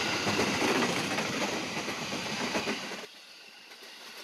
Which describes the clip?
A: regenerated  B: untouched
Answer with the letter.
A